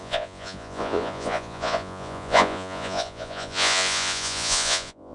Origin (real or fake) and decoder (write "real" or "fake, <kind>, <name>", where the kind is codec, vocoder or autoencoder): fake, vocoder, Vocos